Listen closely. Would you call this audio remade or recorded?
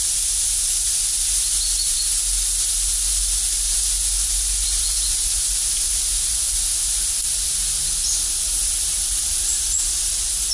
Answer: recorded